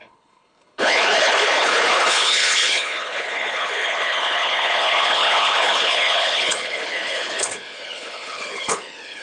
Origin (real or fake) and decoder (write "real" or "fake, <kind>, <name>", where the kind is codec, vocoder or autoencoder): fake, codec, HILCodec